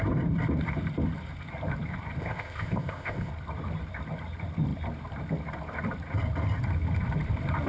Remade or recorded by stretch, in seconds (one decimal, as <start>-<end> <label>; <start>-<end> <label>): 0.0-2.2 recorded; 2.2-3.3 remade; 3.3-7.7 recorded